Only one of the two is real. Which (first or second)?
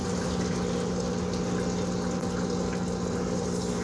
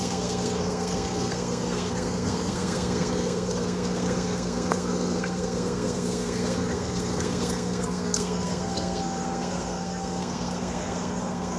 first